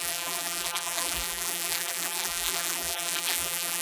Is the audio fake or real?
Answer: fake